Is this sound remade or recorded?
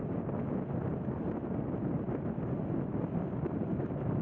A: recorded